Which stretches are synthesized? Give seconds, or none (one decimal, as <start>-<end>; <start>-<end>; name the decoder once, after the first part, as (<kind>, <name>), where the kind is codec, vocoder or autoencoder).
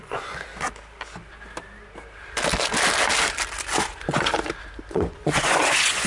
0.0-0.5 (vocoder, Vocos); 3.8-4.3; 4.9-6.1